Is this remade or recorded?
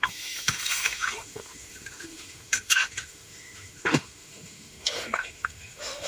remade